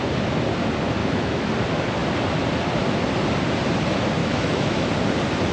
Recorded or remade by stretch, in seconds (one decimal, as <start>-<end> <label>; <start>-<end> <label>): 0.0-1.0 recorded; 1.0-1.5 remade; 1.5-4.2 recorded; 4.2-4.9 remade; 4.9-5.5 recorded